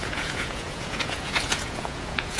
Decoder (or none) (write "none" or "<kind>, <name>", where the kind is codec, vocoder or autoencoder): vocoder, Vocos